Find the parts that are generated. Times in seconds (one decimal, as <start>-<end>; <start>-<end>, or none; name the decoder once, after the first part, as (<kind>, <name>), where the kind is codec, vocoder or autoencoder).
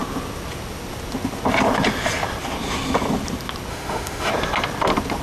3.7-4.3 (autoencoder, DAC-VAE)